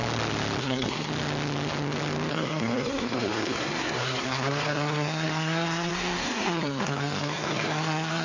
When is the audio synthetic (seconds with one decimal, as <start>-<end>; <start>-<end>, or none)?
0.6-1.1; 2.3-8.2